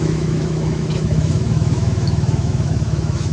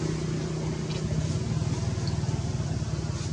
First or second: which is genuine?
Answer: second